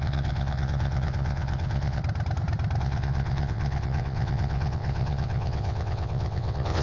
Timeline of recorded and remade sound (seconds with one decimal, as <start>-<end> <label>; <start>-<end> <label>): 0.0-2.0 remade; 2.0-2.8 recorded; 2.8-6.8 remade